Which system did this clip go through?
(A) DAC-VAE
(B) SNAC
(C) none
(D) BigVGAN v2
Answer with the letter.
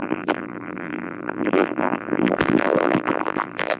D